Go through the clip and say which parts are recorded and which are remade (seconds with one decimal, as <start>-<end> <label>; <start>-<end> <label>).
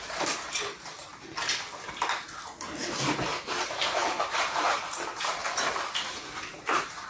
0.0-1.1 remade; 1.1-3.6 recorded; 3.6-5.4 remade; 5.4-6.4 recorded; 6.4-7.1 remade